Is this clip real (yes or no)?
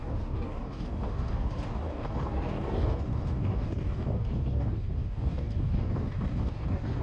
no